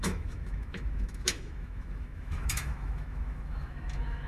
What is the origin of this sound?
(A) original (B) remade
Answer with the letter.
B